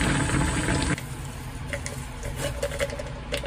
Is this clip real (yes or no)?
yes